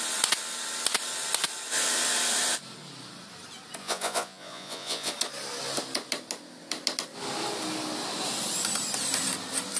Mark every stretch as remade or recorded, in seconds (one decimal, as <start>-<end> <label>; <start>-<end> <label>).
0.0-3.8 recorded; 3.8-5.1 remade; 5.1-9.8 recorded